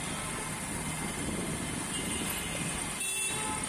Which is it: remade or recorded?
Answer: recorded